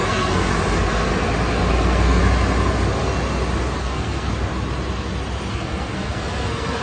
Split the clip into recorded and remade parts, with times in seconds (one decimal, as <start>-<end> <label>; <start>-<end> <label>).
0.0-0.5 remade; 0.5-1.7 recorded; 1.7-2.2 remade; 2.2-3.8 recorded; 3.8-4.3 remade; 4.3-5.5 recorded; 5.5-6.8 remade